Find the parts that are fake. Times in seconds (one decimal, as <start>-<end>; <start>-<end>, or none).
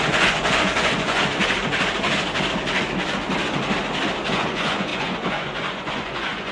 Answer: 0.0-1.2; 4.3-6.5